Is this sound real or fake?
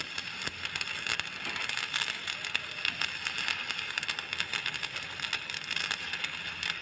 real